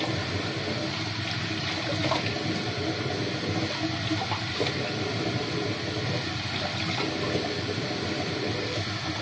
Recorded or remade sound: recorded